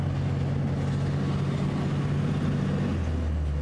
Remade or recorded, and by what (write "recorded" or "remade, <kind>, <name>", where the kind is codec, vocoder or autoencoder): recorded